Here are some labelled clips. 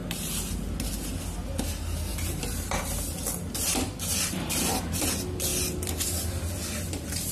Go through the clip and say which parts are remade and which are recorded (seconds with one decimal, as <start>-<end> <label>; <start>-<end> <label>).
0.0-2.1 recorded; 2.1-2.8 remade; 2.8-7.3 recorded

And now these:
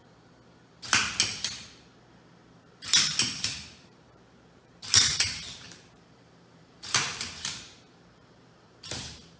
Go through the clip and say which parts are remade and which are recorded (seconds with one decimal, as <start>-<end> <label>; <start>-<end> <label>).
0.0-2.6 recorded; 2.6-9.4 remade

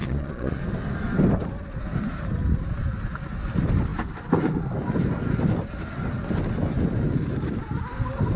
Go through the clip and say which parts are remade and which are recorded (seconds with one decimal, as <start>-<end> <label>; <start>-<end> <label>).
0.0-0.6 remade; 0.6-8.4 recorded